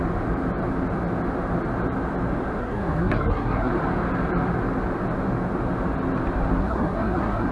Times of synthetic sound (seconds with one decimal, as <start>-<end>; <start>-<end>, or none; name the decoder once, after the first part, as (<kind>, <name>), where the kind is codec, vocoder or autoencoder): 2.6-3.7 (codec, SNAC); 6.6-7.5